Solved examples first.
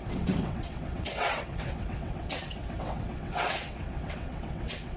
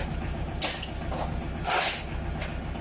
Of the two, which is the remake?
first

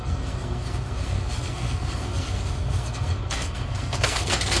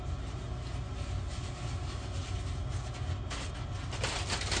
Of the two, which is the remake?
first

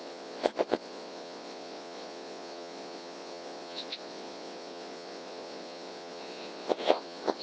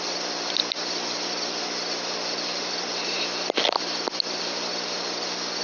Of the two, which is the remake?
first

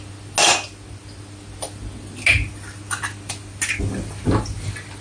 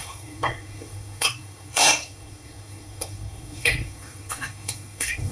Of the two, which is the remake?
second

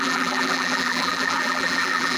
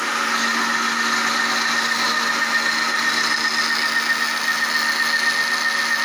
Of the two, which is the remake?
first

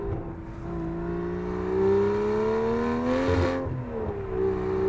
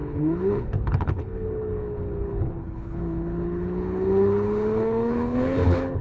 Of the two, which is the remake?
second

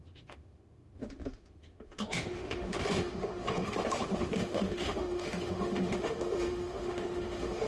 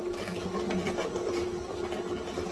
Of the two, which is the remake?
first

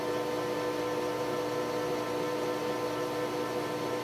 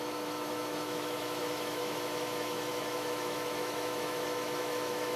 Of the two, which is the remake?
second